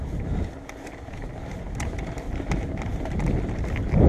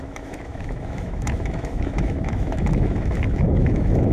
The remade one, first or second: second